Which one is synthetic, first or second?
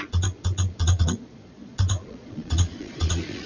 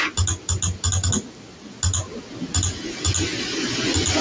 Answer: first